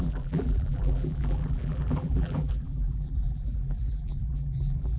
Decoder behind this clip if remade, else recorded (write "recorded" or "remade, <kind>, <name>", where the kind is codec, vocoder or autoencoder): remade, vocoder, BigVGAN v2